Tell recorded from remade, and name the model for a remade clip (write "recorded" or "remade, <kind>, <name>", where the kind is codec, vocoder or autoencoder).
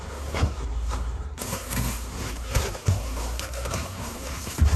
remade, codec, SNAC